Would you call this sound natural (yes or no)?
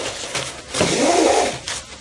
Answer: yes